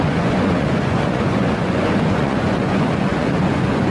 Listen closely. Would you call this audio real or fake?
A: fake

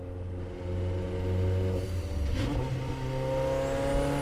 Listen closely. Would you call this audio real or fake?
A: real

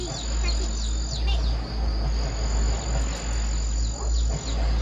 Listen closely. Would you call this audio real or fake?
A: real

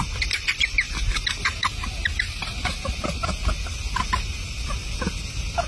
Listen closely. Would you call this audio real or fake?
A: real